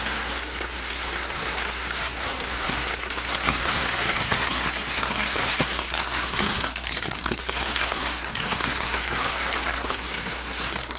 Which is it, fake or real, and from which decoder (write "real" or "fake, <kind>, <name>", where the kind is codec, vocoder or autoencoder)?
fake, codec, SNAC